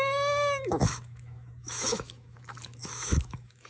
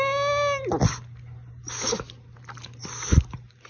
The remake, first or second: first